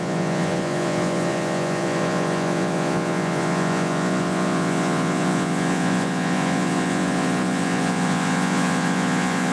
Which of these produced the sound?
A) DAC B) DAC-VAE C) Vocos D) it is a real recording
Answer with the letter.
C